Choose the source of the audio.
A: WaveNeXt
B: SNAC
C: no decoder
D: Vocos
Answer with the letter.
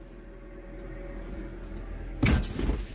C